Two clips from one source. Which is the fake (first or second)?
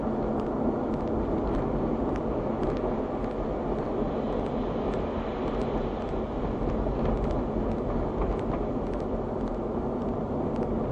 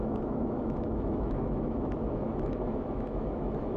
second